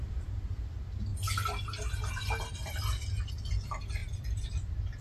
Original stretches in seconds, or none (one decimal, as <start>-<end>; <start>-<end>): 0.0-5.0